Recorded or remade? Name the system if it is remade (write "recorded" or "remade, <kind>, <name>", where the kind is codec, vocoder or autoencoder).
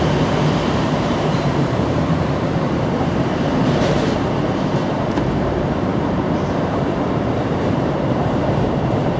remade, vocoder, BigVGAN v2